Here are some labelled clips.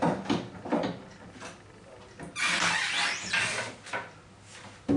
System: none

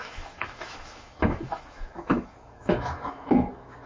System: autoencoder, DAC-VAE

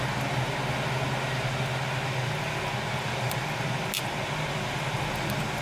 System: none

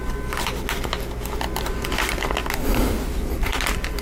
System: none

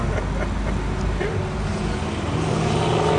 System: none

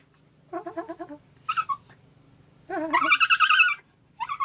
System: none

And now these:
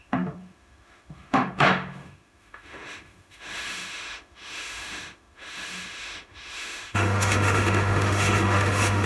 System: autoencoder, DAC-VAE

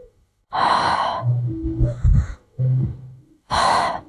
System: autoencoder, DAC-VAE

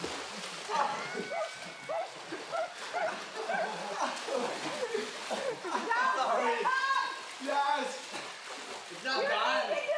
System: none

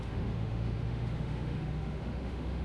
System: autoencoder, DAC-VAE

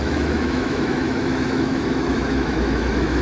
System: autoencoder, DAC-VAE